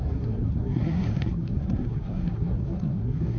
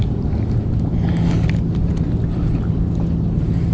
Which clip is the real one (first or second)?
second